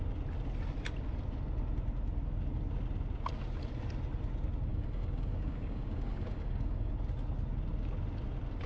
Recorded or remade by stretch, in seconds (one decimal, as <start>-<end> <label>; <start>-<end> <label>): 0.0-4.7 recorded; 4.7-6.9 remade; 6.9-8.7 recorded